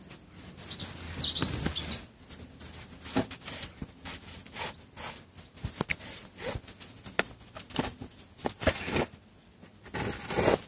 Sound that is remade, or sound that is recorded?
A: recorded